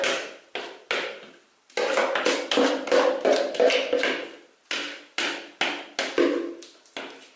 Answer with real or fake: real